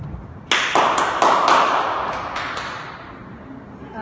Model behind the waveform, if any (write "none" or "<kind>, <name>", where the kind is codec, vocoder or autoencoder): none